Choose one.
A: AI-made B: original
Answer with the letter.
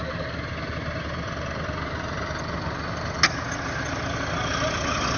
B